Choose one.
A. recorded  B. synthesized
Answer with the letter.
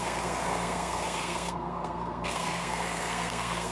B